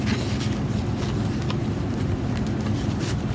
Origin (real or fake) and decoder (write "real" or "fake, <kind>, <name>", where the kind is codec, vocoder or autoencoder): real